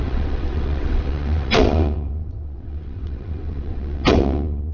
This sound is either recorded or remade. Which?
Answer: remade